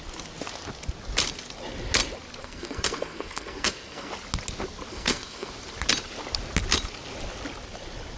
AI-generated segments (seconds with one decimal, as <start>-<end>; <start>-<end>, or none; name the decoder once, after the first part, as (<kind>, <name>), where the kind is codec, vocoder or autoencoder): 2.4-4.1 (codec, SNAC); 4.9-5.5